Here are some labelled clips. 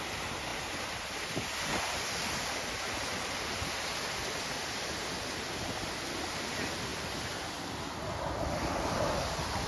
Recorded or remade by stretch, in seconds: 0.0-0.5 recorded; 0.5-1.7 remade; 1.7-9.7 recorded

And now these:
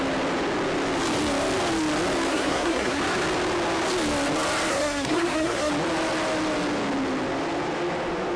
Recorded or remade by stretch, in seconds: 0.0-2.3 recorded; 2.3-3.0 remade; 3.0-4.7 recorded; 4.7-5.7 remade; 5.7-8.4 recorded

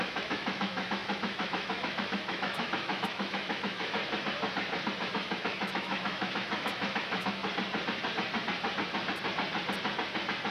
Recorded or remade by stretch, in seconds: 0.0-4.0 remade; 4.0-5.0 recorded; 5.0-7.4 remade; 7.4-10.5 recorded